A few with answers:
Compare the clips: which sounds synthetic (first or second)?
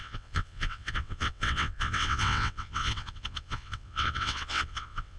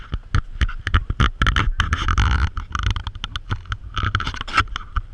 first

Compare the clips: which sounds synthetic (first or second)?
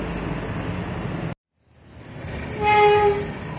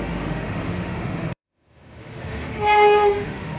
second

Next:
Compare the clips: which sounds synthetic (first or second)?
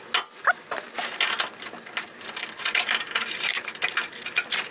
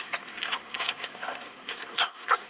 second